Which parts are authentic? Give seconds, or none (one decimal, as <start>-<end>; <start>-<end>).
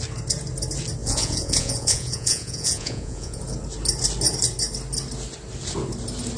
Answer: 0.0-1.0; 3.4-6.4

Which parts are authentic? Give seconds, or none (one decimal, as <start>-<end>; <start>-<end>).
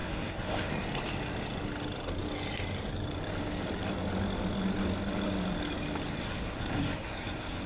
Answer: 0.7-6.2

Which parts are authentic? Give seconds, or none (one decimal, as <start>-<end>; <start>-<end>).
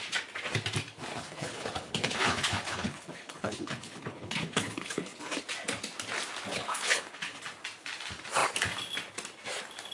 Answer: 0.0-1.1; 5.4-6.5; 7.4-9.9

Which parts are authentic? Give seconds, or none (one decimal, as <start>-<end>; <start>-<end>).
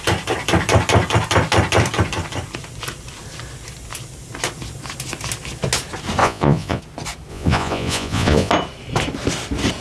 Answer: 0.0-6.2; 6.8-7.3; 8.5-9.8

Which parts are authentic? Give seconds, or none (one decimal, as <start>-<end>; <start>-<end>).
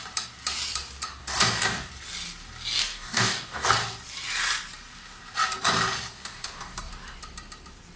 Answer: 0.0-1.2; 1.9-2.8; 3.7-6.1; 6.9-8.0